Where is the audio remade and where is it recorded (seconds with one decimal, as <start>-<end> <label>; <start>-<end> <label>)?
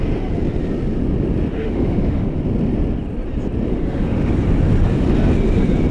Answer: 0.0-1.5 recorded; 1.5-2.4 remade; 2.4-3.7 recorded; 3.7-4.3 remade; 4.3-5.9 recorded